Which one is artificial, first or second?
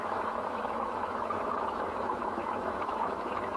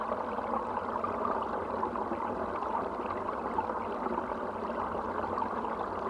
first